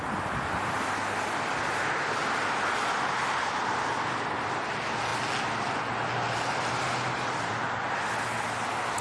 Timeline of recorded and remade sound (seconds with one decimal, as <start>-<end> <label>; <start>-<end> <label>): 0.0-9.0 recorded